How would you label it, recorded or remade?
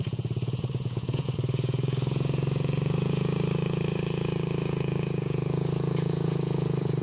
remade